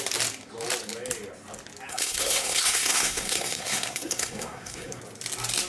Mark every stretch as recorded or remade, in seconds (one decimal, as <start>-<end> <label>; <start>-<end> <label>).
0.0-1.9 recorded; 1.9-5.0 remade; 5.0-5.7 recorded